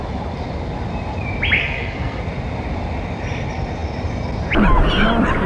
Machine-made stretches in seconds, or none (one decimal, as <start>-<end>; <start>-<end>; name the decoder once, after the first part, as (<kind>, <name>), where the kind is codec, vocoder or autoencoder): 1.6-2.2 (codec, SNAC)